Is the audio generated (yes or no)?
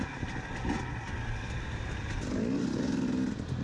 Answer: no